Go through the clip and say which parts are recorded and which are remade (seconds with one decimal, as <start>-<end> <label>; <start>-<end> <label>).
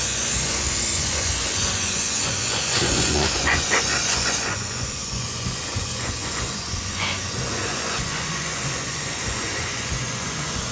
0.0-10.7 remade